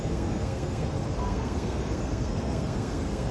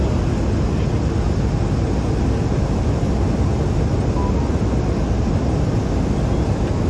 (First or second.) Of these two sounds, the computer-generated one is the first